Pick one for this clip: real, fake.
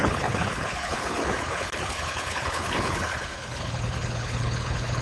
fake